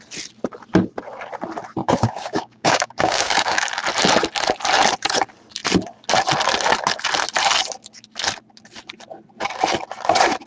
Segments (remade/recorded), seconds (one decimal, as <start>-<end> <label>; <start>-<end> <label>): 0.0-1.8 recorded; 1.8-3.7 remade; 3.7-10.5 recorded